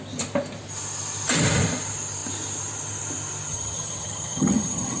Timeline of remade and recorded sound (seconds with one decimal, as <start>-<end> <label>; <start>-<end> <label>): 0.0-3.5 recorded; 3.5-5.0 remade

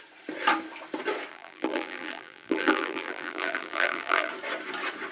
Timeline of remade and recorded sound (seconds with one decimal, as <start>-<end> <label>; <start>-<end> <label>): 0.0-1.3 recorded; 1.3-4.3 remade; 4.3-5.1 recorded

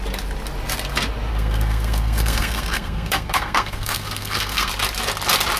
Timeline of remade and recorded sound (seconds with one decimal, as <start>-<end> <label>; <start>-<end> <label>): 0.0-1.3 recorded; 1.3-4.7 remade; 4.7-5.6 recorded

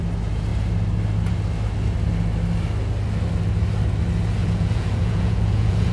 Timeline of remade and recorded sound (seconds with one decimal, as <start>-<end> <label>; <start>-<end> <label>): 0.0-4.4 recorded; 4.4-5.9 remade

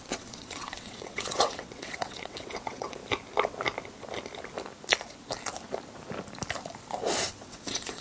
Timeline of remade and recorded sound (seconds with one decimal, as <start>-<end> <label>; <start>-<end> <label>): 0.0-3.0 remade; 3.0-7.3 recorded; 7.3-8.0 remade